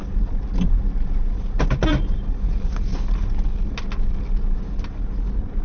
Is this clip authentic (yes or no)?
yes